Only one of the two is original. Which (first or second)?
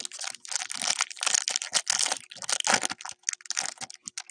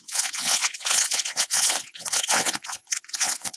first